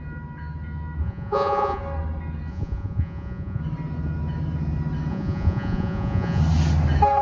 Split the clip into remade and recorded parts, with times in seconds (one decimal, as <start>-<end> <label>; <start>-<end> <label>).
0.0-1.0 recorded; 1.0-1.8 remade; 1.8-2.5 recorded; 2.5-3.6 remade; 3.6-5.1 recorded; 5.1-6.4 remade; 6.4-7.2 recorded